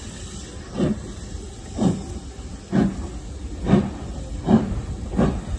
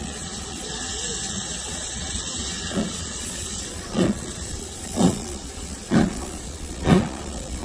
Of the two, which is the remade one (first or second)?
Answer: second